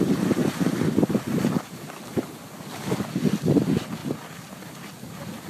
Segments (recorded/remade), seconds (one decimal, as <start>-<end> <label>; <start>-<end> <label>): 0.0-0.4 remade; 0.4-1.9 recorded; 1.9-5.5 remade